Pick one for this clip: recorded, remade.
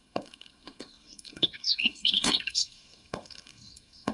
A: remade